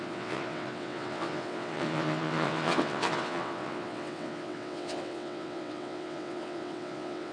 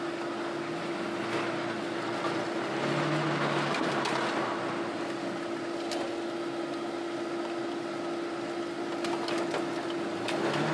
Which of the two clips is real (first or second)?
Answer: second